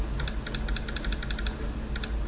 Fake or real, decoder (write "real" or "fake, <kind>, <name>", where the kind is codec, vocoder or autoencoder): real